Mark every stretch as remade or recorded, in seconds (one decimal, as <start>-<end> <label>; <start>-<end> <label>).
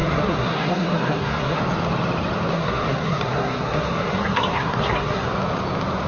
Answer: 0.0-1.6 remade; 1.6-2.5 recorded; 2.5-5.3 remade; 5.3-6.1 recorded